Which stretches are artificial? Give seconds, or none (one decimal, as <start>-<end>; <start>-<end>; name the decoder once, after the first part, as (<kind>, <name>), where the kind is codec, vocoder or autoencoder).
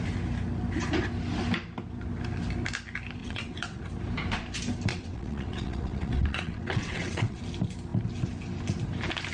3.2-3.8 (vocoder, WaveNeXt); 4.9-7.4